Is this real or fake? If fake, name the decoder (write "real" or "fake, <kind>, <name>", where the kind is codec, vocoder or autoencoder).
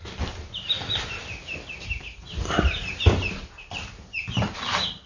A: real